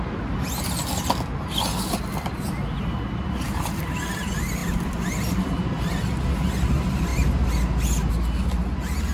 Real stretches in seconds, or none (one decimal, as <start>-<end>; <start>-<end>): 0.0-9.1